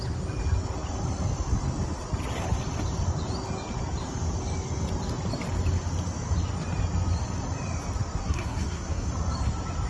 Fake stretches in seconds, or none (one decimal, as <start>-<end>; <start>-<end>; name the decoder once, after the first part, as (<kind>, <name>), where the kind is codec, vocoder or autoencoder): 8.2-9.1 (codec, SNAC)